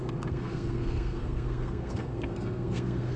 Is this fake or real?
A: fake